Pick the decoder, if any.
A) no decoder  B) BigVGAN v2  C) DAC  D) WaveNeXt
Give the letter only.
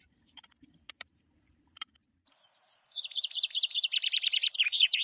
B